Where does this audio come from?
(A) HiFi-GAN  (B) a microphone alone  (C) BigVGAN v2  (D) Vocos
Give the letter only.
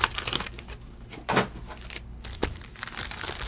B